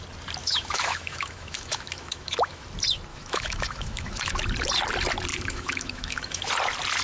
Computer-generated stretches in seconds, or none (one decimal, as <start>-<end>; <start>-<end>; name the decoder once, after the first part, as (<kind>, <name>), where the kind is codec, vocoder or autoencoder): 0.4-2.6 (autoencoder, DAC-VAE); 3.1-4.3; 5.3-6.5